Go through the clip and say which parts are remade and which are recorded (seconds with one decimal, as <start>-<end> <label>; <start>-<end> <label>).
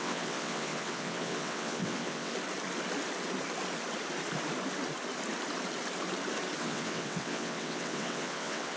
0.0-2.3 remade; 2.3-6.6 recorded; 6.6-8.8 remade